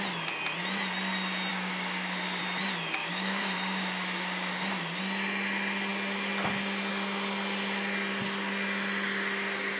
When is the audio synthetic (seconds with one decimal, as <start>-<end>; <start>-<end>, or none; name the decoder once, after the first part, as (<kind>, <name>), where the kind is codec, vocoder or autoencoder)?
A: 1.5-2.4 (codec, DAC); 3.0-5.0